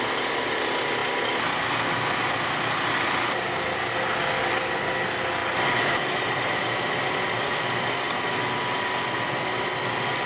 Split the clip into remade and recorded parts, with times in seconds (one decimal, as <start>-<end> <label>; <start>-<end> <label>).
0.0-10.3 recorded